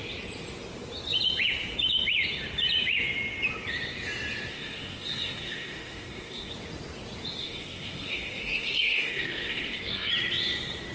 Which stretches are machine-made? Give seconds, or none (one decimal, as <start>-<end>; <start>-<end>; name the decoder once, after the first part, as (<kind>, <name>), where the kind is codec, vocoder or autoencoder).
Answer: 4.5-6.5 (codec, SNAC); 7.4-10.1

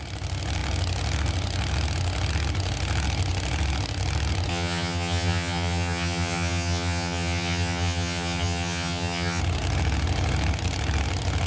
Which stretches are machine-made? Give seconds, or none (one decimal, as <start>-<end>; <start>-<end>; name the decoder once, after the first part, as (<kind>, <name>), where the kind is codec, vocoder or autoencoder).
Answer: 4.5-9.4 (vocoder, HiFi-GAN)

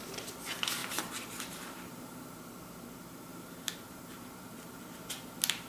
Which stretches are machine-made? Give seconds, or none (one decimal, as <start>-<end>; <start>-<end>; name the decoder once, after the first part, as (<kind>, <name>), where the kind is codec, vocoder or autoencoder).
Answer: 0.8-2.4 (vocoder, BigVGAN v2); 3.3-4.8

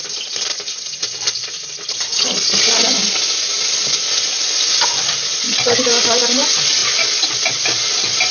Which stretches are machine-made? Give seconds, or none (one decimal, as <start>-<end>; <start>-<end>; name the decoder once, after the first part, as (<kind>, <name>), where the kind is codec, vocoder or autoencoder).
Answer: none